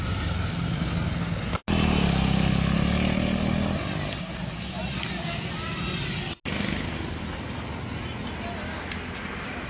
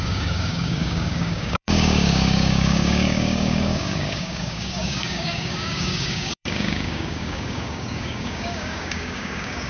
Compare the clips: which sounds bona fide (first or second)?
first